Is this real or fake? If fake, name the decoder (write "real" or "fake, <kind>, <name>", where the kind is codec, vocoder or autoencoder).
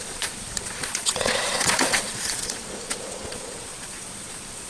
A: fake, vocoder, Vocos